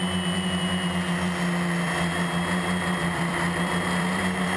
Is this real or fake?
fake